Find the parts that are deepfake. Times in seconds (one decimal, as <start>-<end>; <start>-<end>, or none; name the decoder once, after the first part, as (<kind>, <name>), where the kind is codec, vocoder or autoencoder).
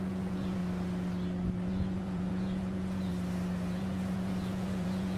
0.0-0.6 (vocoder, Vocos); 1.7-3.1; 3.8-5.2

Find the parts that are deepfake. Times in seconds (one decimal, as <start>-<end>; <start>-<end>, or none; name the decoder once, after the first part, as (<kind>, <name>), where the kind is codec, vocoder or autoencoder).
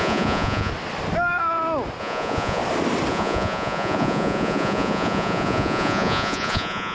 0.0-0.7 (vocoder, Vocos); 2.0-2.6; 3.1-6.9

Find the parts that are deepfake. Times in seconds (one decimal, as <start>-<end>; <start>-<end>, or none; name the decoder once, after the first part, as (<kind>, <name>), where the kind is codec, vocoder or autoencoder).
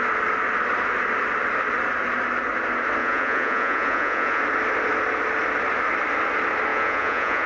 3.0-4.4 (vocoder, Vocos); 6.7-7.5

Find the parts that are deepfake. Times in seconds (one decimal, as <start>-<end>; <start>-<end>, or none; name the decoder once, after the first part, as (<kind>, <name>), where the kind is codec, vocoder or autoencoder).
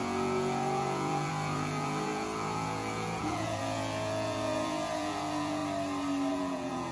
0.0-5.6 (vocoder, Vocos); 6.3-6.9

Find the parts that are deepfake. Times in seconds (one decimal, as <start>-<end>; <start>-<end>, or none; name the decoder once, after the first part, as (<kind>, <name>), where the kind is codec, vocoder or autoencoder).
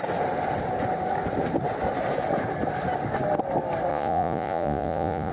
3.9-5.3 (vocoder, Vocos)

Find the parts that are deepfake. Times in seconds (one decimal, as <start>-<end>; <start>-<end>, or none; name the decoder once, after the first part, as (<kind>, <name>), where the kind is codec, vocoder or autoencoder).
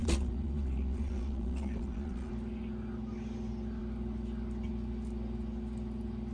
0.0-2.3 (vocoder, Vocos)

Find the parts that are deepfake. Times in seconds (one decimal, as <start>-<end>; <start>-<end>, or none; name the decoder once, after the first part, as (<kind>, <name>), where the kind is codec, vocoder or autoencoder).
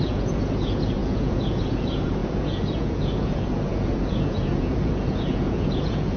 0.0-6.2 (vocoder, Vocos)